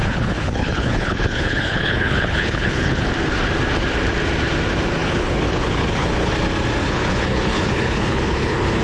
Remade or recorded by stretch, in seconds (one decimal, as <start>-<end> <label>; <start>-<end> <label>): 0.0-3.1 remade; 3.1-5.0 recorded; 5.0-6.3 remade; 6.3-6.8 recorded; 6.8-8.8 remade